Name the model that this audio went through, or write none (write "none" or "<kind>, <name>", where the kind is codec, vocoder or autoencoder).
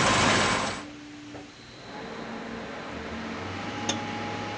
none